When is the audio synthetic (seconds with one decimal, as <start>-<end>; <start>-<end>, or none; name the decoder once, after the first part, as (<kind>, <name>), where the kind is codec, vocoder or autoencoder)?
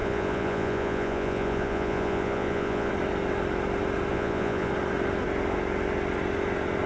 0.0-2.9 (vocoder, Vocos); 4.1-4.7